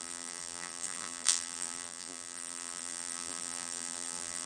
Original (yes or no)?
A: no